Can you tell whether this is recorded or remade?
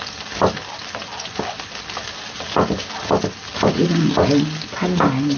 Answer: recorded